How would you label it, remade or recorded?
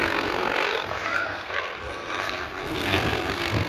remade